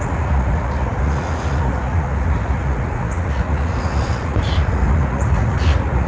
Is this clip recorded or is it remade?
remade